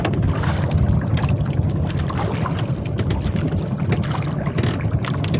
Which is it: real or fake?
real